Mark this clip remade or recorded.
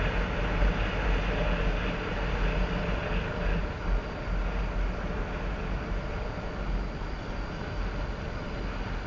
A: recorded